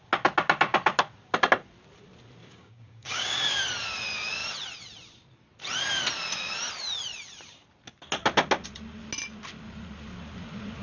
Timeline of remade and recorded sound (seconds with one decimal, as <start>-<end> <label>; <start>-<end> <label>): 0.0-2.4 recorded; 2.4-3.6 remade; 3.6-10.8 recorded